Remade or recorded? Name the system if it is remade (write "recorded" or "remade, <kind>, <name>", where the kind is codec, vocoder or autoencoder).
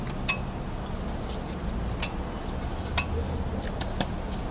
recorded